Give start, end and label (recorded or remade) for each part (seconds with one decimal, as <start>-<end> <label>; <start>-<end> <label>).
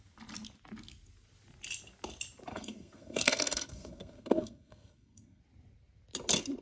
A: 0.0-2.5 recorded; 2.5-5.4 remade; 5.4-6.6 recorded